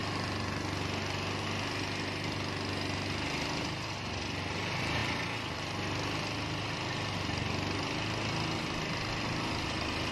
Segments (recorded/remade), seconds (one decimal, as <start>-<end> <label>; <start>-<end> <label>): 0.0-10.1 recorded